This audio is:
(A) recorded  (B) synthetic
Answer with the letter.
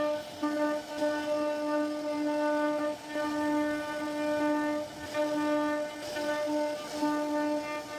A